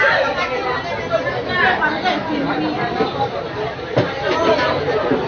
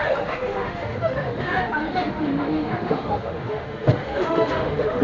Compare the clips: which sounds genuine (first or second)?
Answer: first